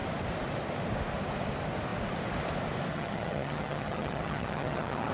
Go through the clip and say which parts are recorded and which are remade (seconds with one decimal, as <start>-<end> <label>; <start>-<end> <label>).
0.0-2.9 recorded; 2.9-5.1 remade